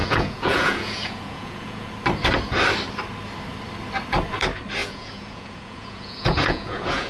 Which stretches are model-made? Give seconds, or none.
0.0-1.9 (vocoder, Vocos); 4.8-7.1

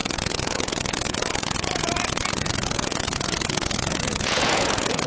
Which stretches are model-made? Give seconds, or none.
0.0-5.1 (vocoder, Vocos)

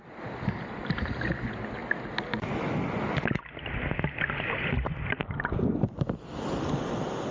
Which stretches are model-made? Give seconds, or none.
none

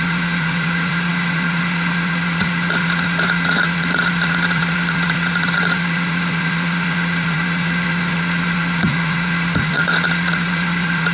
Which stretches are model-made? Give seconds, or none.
0.0-11.1 (vocoder, Vocos)

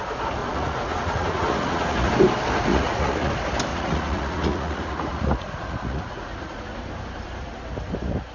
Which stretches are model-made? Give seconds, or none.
0.4-2.1 (vocoder, Vocos); 2.7-3.3; 3.7-6.6